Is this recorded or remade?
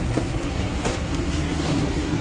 remade